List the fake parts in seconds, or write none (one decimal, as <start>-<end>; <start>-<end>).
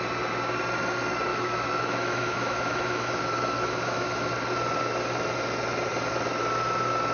1.3-4.3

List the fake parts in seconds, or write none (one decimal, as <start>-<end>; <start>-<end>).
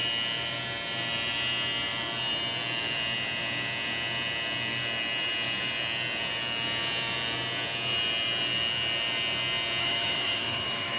9.8-11.0